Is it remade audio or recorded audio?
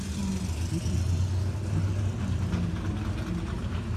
recorded